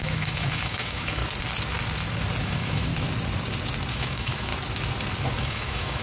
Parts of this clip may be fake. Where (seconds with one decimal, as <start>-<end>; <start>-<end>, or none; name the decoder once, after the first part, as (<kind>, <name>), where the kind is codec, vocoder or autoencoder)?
0.0-1.2 (autoencoder, DAC-VAE); 2.4-2.9; 3.9-4.5; 5.4-6.0